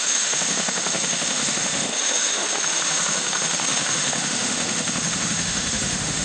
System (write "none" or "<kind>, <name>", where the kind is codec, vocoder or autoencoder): autoencoder, DAC-VAE